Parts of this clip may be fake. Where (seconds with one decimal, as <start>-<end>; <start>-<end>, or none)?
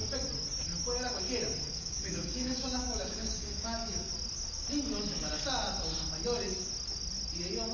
1.7-4.1